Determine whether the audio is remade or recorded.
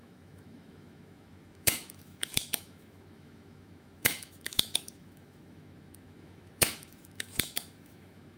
remade